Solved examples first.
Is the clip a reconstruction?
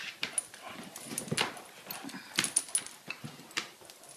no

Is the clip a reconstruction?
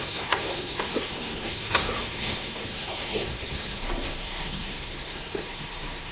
yes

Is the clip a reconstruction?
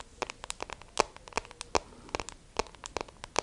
no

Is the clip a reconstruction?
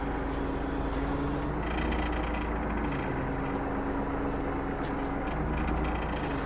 no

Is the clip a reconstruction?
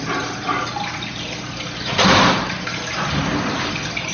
no